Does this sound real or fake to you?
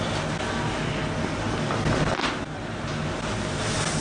real